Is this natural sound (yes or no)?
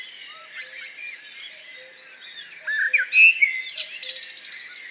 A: yes